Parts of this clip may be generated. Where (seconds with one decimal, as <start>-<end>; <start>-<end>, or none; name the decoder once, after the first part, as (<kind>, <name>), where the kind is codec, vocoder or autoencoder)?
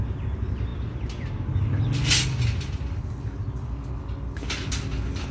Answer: none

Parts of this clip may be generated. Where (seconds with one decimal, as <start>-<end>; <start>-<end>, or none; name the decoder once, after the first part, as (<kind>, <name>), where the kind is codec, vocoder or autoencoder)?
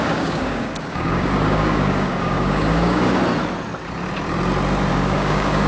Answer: 0.0-3.2 (codec, DAC); 4.9-5.7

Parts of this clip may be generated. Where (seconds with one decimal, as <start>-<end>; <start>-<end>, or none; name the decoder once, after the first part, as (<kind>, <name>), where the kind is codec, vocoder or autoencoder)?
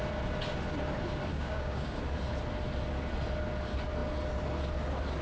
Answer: 1.3-2.0 (codec, DAC)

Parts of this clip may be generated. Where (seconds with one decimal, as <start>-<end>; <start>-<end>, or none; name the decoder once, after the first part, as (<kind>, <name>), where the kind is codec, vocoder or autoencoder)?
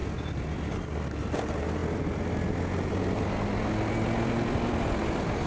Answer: none